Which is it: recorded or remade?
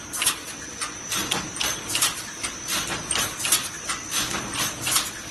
recorded